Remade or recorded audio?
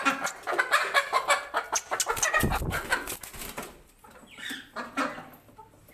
recorded